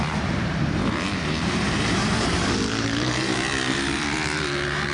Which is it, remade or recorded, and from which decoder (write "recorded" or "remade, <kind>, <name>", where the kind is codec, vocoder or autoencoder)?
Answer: remade, vocoder, BigVGAN v2